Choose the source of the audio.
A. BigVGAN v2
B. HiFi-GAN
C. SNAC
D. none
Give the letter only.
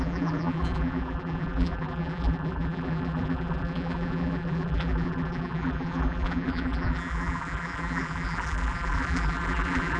A